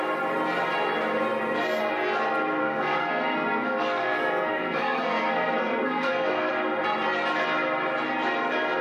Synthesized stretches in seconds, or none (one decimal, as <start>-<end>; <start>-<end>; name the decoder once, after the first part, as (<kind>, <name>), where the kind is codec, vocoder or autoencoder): 2.6-6.5 (codec, SNAC)